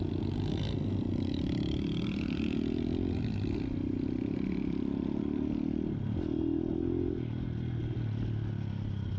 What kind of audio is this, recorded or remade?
recorded